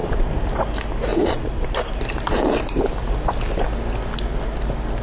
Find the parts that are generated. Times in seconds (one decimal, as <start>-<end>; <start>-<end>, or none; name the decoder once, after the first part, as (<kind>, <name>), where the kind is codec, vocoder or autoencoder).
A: 0.0-0.6 (vocoder, BigVGAN v2); 1.1-3.6